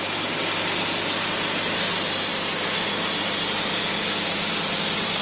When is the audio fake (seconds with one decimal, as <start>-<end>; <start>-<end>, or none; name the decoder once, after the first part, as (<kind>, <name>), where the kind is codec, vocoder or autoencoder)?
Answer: 0.0-5.2 (vocoder, BigVGAN v2)